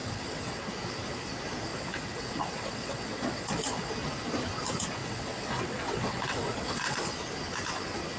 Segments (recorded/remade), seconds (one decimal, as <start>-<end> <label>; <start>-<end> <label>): 0.0-0.7 remade; 0.7-1.7 recorded; 1.7-3.9 remade; 3.9-5.0 recorded; 5.0-7.1 remade; 7.1-8.2 recorded